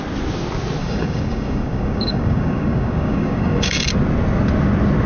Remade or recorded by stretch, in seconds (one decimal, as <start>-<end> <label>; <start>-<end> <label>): 0.0-0.8 recorded; 0.8-3.9 remade; 3.9-5.1 recorded